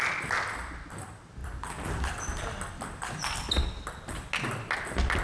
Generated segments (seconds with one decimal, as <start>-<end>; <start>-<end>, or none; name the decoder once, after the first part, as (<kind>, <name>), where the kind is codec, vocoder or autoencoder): none